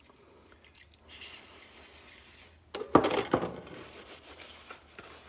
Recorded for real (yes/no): yes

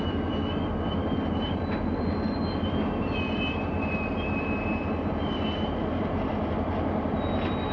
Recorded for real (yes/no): yes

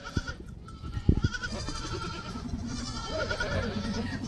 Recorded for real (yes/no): no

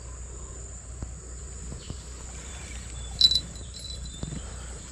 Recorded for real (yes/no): no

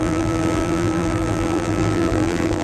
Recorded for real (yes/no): no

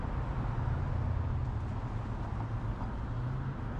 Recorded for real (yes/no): yes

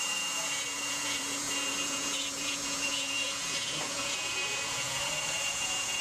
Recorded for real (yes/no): no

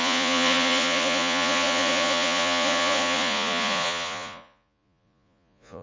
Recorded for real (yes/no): no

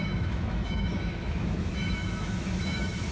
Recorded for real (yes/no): no